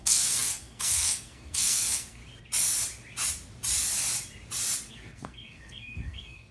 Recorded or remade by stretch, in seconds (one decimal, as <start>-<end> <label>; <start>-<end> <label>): 0.0-2.2 remade; 2.2-4.9 recorded; 4.9-6.5 remade